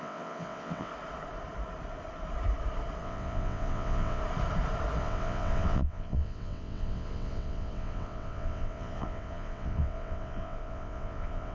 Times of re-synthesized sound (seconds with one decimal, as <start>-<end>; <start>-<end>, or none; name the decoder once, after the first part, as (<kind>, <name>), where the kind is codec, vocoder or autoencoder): 0.0-0.9 (vocoder, WaveNeXt); 3.0-4.2; 5.0-11.5